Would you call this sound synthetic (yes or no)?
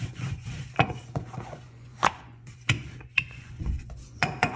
yes